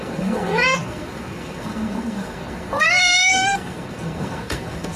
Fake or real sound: fake